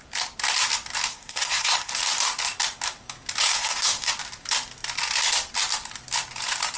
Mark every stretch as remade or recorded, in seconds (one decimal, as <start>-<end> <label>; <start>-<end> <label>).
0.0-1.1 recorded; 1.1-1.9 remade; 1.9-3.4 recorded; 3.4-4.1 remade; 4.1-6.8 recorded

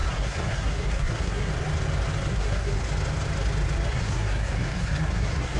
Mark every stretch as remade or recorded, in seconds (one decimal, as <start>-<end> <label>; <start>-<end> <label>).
0.0-1.5 remade; 1.5-2.3 recorded; 2.3-2.8 remade; 2.8-3.9 recorded; 3.9-5.6 remade

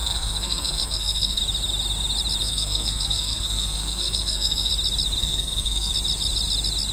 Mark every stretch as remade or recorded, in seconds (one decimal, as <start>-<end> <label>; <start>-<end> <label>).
0.0-1.4 remade; 1.4-2.4 recorded; 2.4-4.7 remade; 4.7-5.2 recorded; 5.2-5.9 remade; 5.9-6.9 recorded

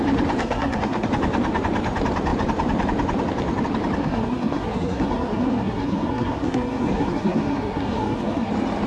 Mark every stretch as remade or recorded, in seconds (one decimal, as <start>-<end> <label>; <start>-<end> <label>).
0.0-0.4 recorded; 0.4-1.1 remade; 1.1-4.0 recorded; 4.0-8.5 remade; 8.5-8.9 recorded

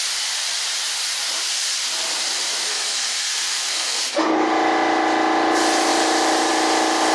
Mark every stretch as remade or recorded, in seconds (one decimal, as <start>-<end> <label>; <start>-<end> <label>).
0.0-2.7 recorded; 2.7-4.0 remade; 4.0-7.1 recorded

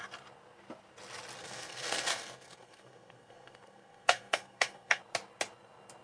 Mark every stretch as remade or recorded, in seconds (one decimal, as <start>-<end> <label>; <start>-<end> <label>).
0.0-1.4 recorded; 1.4-5.0 remade; 5.0-6.0 recorded